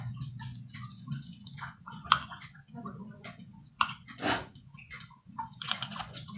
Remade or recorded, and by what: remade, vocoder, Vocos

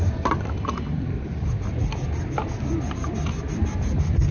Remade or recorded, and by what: recorded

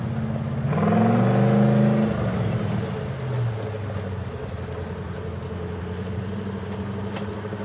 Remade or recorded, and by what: recorded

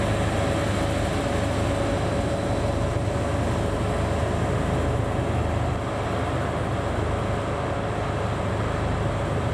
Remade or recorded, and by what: recorded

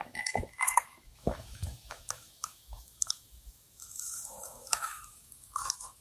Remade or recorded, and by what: remade, autoencoder, DAC-VAE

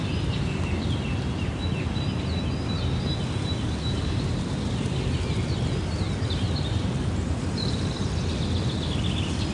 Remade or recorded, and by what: recorded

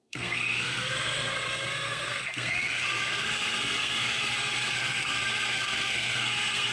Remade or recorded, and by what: remade, codec, SNAC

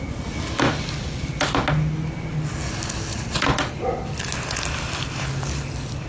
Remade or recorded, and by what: recorded